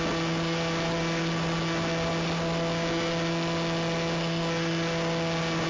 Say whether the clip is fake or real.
real